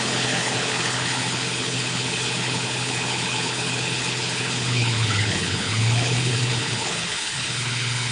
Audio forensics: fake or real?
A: fake